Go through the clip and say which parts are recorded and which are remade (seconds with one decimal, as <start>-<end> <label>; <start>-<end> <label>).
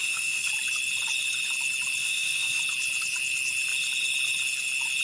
0.0-0.5 remade; 0.5-2.0 recorded; 2.0-2.6 remade; 2.6-5.0 recorded